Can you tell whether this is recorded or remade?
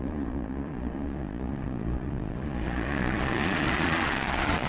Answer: remade